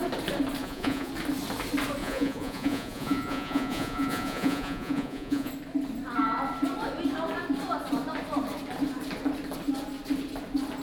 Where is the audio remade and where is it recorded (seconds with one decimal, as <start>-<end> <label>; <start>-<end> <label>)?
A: 0.0-0.6 recorded; 0.6-1.1 remade; 1.1-2.0 recorded; 2.0-5.5 remade; 5.5-10.8 recorded